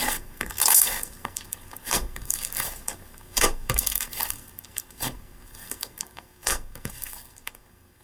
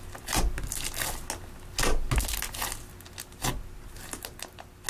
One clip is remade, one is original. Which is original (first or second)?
second